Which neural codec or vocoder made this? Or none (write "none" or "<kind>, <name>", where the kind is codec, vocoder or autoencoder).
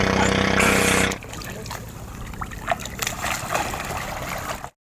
none